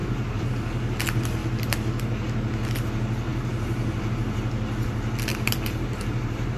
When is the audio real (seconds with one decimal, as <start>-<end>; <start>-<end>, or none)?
0.5-3.3; 4.1-5.3